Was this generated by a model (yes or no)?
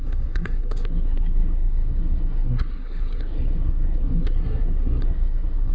yes